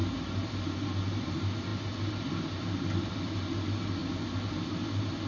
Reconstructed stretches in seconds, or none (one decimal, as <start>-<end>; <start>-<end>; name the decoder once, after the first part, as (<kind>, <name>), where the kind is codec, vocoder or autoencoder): none